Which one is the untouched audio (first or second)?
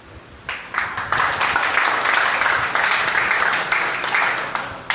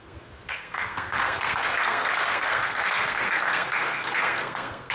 first